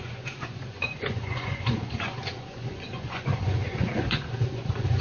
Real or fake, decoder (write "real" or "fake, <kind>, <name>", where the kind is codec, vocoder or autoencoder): fake, vocoder, Vocos